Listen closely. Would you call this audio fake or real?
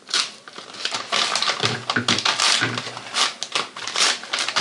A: real